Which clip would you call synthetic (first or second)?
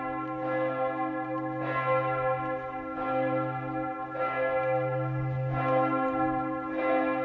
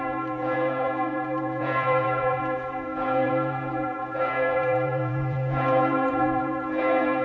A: second